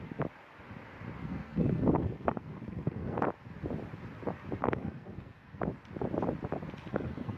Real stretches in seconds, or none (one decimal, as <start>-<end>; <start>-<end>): 0.0-1.2; 3.2-4.6; 5.6-6.9